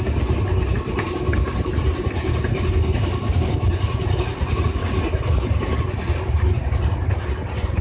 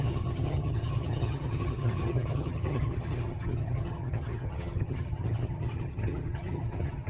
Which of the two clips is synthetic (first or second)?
second